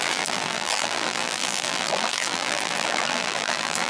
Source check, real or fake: fake